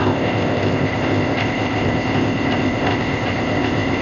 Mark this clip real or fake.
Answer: fake